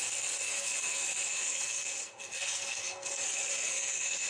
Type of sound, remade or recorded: remade